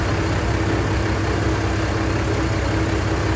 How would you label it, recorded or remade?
recorded